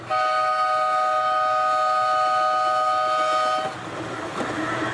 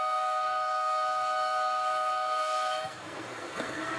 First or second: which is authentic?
first